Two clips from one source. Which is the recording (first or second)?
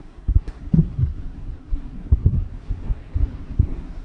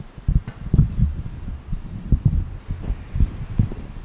second